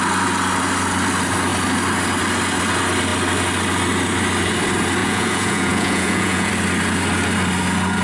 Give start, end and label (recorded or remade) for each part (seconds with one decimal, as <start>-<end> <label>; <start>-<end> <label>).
0.0-5.0 recorded; 5.0-6.5 remade; 6.5-8.0 recorded